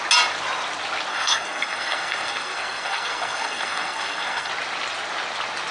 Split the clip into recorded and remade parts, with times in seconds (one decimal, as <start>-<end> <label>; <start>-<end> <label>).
0.0-1.1 recorded; 1.1-4.5 remade; 4.5-5.7 recorded

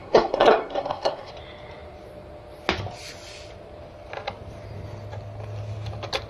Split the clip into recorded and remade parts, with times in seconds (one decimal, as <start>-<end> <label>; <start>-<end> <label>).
0.0-1.3 remade; 1.3-6.3 recorded

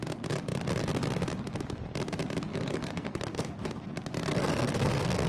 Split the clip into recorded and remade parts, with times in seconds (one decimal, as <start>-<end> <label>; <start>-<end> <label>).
0.0-2.5 recorded; 2.5-3.5 remade; 3.5-4.3 recorded; 4.3-5.3 remade

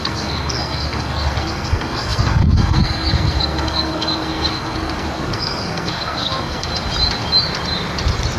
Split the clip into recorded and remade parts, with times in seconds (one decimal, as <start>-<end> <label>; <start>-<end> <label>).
0.0-6.7 remade; 6.7-8.4 recorded

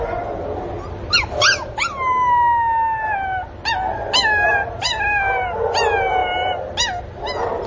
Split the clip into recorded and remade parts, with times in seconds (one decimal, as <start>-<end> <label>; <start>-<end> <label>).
0.0-7.7 recorded

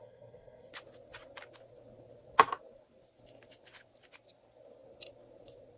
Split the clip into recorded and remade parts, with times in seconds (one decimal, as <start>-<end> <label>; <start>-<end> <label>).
0.0-0.7 remade; 0.7-5.8 recorded

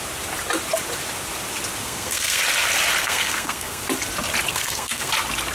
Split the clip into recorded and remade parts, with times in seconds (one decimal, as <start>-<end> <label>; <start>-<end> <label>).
0.0-1.8 recorded; 1.8-2.4 remade; 2.4-3.0 recorded; 3.0-3.8 remade; 3.8-4.5 recorded; 4.5-5.1 remade; 5.1-5.5 recorded

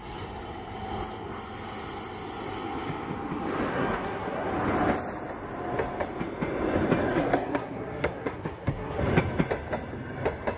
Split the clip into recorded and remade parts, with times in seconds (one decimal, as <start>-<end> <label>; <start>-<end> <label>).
0.0-3.7 recorded; 3.7-4.5 remade; 4.5-7.1 recorded; 7.1-9.0 remade; 9.0-10.6 recorded